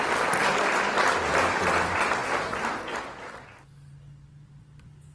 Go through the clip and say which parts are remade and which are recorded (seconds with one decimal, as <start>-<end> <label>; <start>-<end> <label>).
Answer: 0.0-5.1 recorded